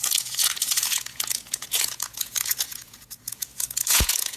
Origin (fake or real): fake